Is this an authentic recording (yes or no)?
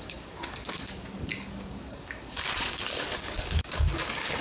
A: no